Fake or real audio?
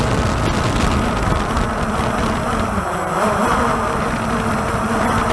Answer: real